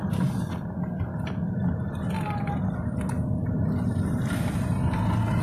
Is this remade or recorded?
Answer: recorded